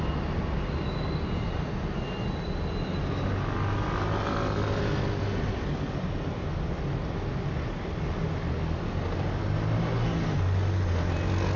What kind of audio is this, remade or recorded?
recorded